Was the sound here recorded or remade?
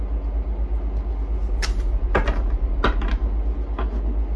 recorded